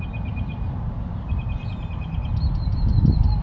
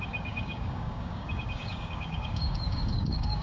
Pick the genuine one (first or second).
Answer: first